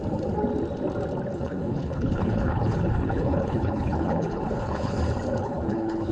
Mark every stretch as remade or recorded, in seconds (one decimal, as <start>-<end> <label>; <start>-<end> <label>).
0.0-1.3 recorded; 1.3-5.0 remade; 5.0-5.4 recorded; 5.4-6.1 remade